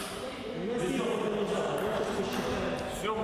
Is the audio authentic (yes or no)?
yes